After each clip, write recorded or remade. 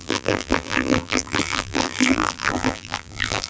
remade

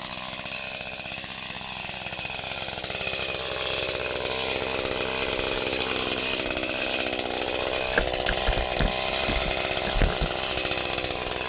recorded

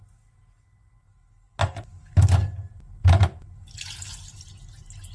recorded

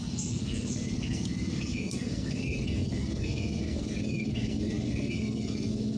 remade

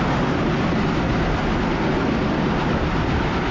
recorded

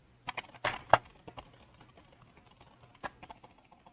recorded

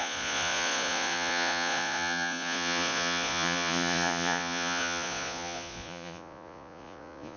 remade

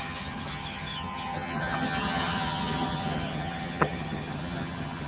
remade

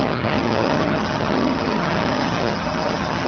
remade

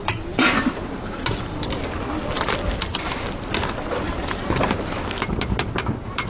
recorded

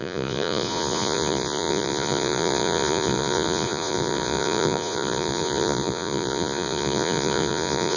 remade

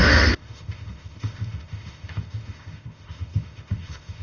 remade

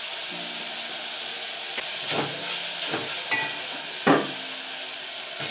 recorded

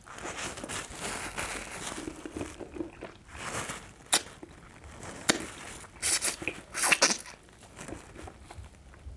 recorded